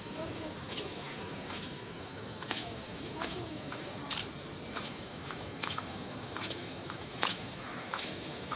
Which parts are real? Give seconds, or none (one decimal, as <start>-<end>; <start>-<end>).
4.0-4.7